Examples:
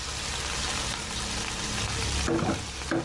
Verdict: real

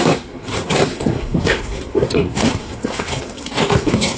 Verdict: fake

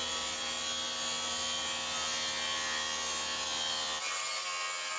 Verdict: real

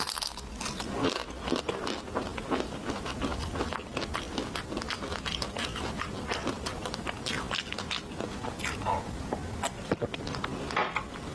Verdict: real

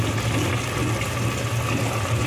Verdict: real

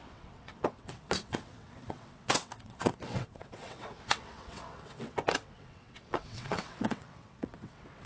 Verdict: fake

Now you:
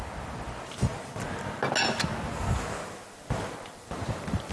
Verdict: real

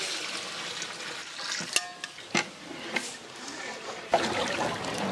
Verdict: real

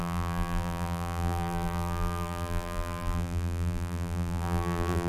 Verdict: fake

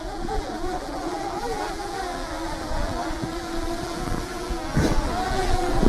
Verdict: fake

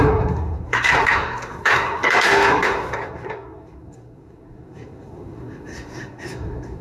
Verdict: fake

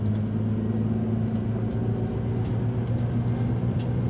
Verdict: real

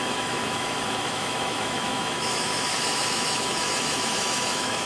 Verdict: fake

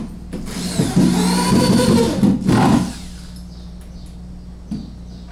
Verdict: real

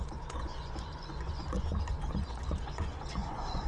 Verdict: fake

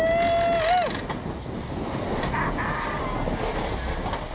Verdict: real